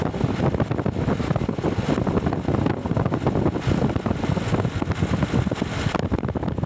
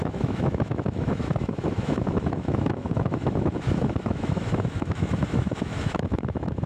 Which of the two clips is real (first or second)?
first